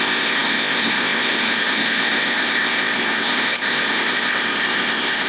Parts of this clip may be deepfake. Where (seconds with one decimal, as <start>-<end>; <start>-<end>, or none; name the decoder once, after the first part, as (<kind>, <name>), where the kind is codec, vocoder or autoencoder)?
0.0-5.3 (codec, ZipCodec)